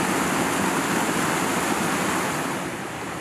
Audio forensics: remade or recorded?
recorded